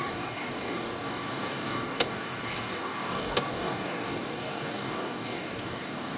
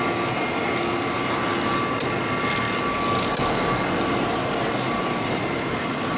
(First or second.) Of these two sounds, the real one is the second